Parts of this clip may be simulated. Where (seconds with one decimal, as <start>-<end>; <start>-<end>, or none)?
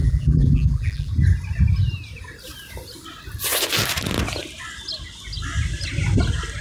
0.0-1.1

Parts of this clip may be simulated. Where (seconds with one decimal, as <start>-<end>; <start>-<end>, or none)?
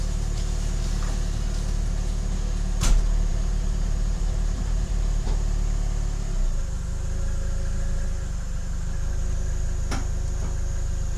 3.3-5.3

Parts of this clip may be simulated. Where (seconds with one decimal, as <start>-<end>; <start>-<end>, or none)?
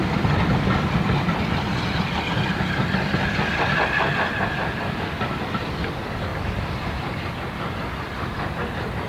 none